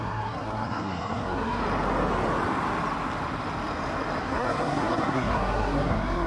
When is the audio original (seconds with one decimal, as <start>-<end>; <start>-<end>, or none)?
1.6-4.2